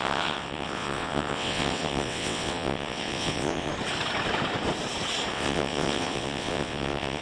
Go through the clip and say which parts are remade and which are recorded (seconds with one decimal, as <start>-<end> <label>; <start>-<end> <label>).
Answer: 0.0-3.7 remade; 3.7-5.3 recorded; 5.3-7.2 remade